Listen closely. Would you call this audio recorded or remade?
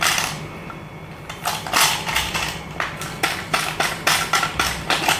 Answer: recorded